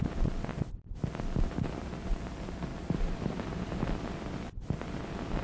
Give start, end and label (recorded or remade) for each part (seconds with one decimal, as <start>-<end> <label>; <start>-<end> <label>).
0.0-0.5 recorded; 0.5-1.9 remade; 1.9-2.7 recorded; 2.7-5.0 remade; 5.0-5.4 recorded